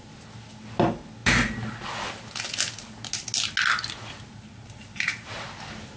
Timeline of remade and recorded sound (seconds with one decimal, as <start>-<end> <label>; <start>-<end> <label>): 0.0-6.0 recorded